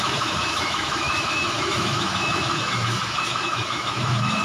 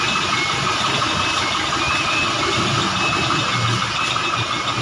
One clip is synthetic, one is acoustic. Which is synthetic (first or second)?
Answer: first